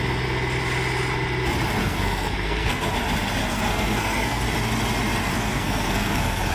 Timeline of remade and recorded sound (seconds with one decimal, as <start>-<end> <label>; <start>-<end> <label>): 0.0-1.8 recorded; 1.8-2.9 remade; 2.9-3.4 recorded; 3.4-4.4 remade; 4.4-5.3 recorded; 5.3-6.5 remade

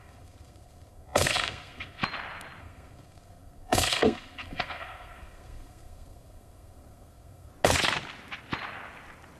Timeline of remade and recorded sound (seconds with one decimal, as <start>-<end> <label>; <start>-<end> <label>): 0.0-2.0 remade; 2.0-2.6 recorded; 2.6-7.5 remade; 7.5-9.4 recorded

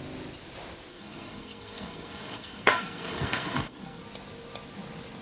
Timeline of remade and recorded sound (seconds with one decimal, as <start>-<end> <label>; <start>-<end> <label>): 0.0-0.9 recorded; 0.9-4.0 remade; 4.0-5.2 recorded

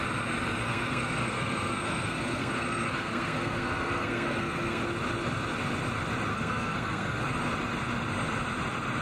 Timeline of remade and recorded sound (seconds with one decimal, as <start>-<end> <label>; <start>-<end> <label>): 0.0-0.6 recorded; 0.6-4.8 remade; 4.8-6.3 recorded; 6.3-7.2 remade; 7.2-9.0 recorded

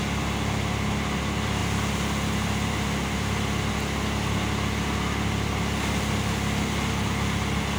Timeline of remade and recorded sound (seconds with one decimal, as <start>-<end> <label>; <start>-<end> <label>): 0.0-7.8 recorded